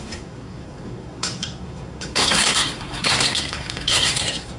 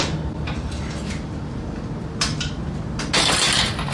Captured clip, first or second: second